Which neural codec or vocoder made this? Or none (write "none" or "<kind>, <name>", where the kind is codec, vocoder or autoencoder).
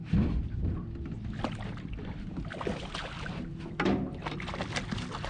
none